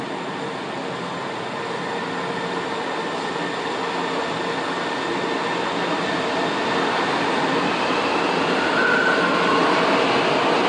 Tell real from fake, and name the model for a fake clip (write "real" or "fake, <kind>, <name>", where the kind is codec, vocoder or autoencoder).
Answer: real